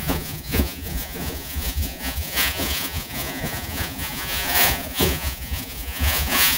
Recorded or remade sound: remade